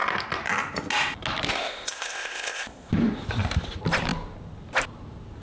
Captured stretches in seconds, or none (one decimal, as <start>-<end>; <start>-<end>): 0.0-1.5; 2.9-5.4